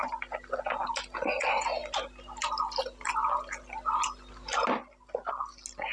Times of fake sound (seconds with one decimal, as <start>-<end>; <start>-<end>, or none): none